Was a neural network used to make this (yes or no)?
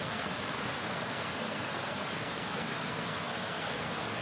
yes